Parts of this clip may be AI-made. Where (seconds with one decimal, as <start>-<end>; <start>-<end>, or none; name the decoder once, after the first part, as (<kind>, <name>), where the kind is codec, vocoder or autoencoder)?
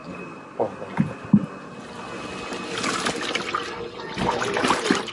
none